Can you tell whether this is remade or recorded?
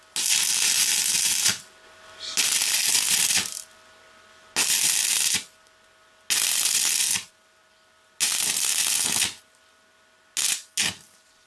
recorded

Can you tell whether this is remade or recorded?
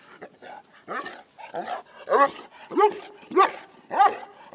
recorded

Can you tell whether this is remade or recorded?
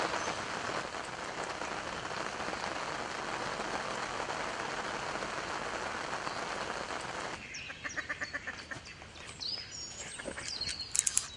recorded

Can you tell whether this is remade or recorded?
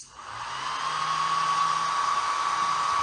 recorded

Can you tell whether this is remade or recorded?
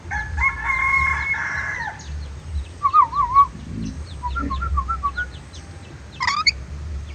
recorded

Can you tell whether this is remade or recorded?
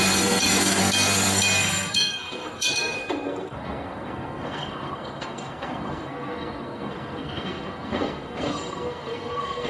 remade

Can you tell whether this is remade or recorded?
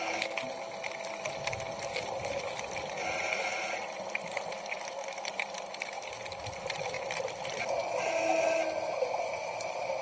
recorded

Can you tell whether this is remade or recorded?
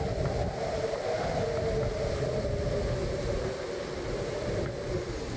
recorded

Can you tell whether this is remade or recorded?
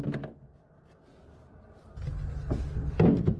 recorded